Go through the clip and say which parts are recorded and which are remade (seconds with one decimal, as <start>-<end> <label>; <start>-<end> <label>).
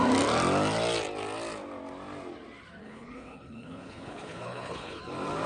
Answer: 0.0-2.8 recorded; 2.8-5.0 remade; 5.0-5.5 recorded